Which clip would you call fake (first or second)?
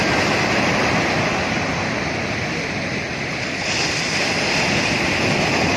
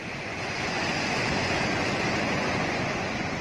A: second